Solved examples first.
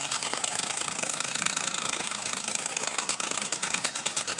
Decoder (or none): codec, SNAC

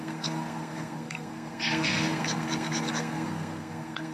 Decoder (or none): codec, SNAC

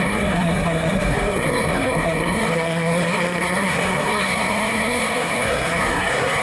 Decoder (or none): codec, SNAC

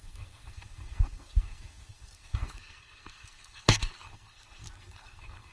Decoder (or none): codec, SNAC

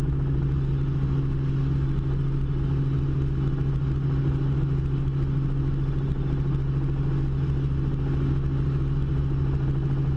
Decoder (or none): none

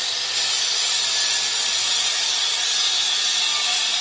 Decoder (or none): none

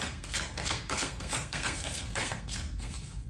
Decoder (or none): codec, SNAC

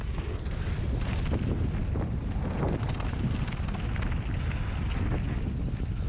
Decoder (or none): none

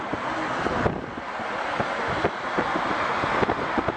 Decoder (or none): none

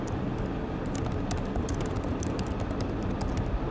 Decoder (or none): none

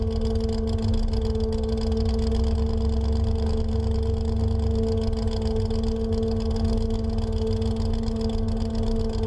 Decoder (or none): none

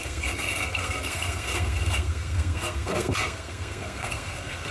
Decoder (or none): codec, SNAC